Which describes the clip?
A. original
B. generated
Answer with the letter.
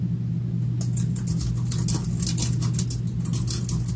A